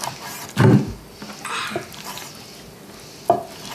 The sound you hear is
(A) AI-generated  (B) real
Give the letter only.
B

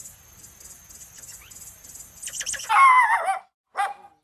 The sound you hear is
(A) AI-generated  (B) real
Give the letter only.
B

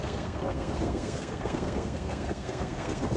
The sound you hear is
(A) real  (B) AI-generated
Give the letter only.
B